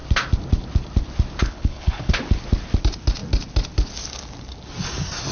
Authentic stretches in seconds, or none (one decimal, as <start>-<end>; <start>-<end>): 0.0-1.4; 2.1-5.3